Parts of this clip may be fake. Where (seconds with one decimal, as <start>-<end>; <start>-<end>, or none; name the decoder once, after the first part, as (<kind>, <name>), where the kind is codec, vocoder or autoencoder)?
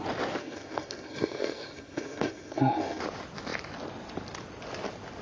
0.4-3.0 (codec, SNAC)